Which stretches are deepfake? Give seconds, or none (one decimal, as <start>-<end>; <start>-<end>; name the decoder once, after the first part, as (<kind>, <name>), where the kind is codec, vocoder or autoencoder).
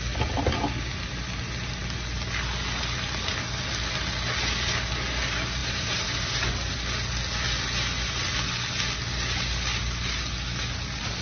5.6-6.3 (vocoder, BigVGAN v2)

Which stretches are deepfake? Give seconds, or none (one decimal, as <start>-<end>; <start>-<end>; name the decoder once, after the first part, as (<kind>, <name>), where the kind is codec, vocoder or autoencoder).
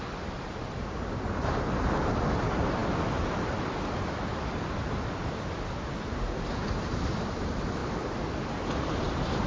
none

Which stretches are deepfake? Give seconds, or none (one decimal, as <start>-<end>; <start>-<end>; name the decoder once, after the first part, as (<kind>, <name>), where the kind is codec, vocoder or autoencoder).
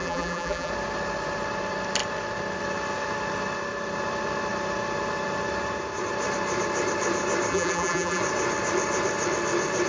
0.0-0.7 (vocoder, BigVGAN v2); 7.5-8.2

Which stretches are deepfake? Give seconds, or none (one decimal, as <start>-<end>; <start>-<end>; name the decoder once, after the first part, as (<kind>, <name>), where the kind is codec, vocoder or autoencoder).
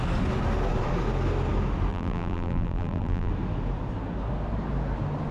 1.9-3.3 (vocoder, BigVGAN v2)